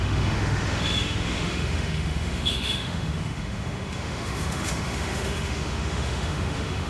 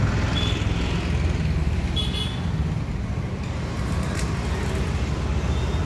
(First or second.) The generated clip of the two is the first